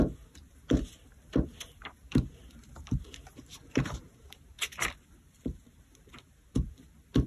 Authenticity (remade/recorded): remade